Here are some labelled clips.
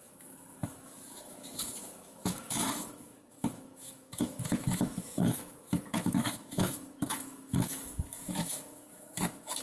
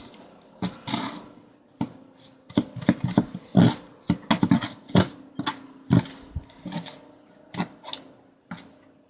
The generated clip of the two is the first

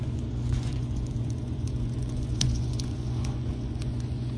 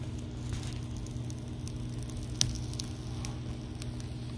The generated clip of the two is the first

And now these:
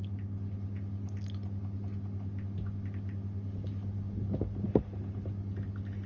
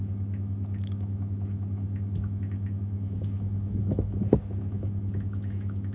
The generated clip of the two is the second